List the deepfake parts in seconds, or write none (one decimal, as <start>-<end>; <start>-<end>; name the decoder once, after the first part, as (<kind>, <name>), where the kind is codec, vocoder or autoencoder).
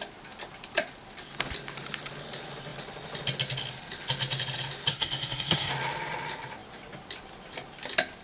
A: 4.9-5.7 (codec, SNAC)